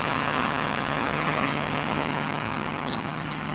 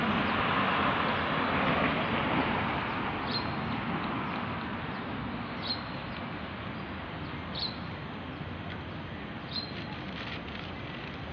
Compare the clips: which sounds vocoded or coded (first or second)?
first